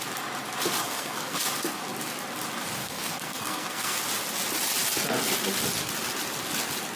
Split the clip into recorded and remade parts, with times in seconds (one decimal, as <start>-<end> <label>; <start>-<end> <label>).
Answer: 0.0-0.8 recorded; 0.8-1.4 remade; 1.4-2.8 recorded; 2.8-4.0 remade; 4.0-7.0 recorded